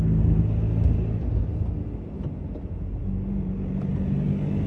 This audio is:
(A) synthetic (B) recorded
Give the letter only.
B